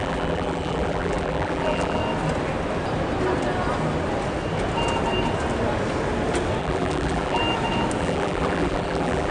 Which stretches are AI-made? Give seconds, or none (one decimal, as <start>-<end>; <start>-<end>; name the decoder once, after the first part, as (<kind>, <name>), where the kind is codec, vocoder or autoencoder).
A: 0.0-2.0 (vocoder, BigVGAN v2); 6.6-7.4; 8.0-9.3